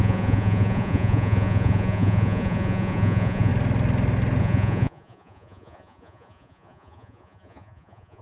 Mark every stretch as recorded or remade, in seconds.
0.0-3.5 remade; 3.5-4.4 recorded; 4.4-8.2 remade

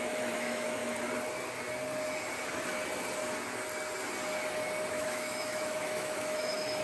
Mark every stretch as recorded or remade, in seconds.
0.0-0.8 remade; 0.8-4.9 recorded; 4.9-6.8 remade

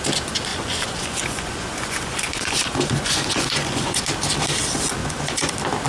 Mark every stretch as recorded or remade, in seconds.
0.0-0.5 recorded; 0.5-4.0 remade; 4.0-5.0 recorded; 5.0-5.5 remade; 5.5-5.9 recorded

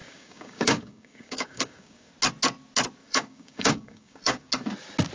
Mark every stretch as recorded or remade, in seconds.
0.0-2.1 remade; 2.1-3.0 recorded; 3.0-4.5 remade; 4.5-5.1 recorded

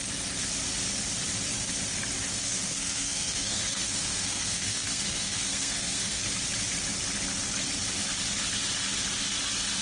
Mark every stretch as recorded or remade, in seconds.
0.0-2.3 recorded; 2.3-6.2 remade; 6.2-9.8 recorded

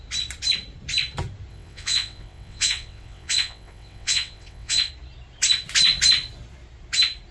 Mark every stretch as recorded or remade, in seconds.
0.0-1.5 recorded; 1.5-4.9 remade; 4.9-7.3 recorded